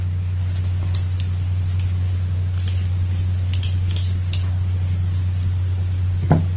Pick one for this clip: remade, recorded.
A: recorded